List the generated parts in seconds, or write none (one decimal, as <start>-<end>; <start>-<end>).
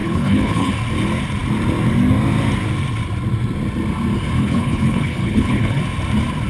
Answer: 0.0-0.7; 4.4-5.8